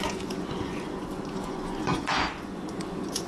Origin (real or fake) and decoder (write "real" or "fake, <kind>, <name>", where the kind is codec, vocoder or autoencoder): fake, vocoder, Vocos